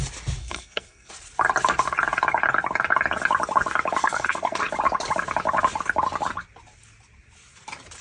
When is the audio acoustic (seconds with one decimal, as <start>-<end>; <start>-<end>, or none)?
0.0-0.4; 1.1-4.0; 4.6-8.0